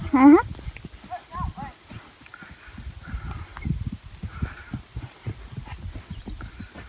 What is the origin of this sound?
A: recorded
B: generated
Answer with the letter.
A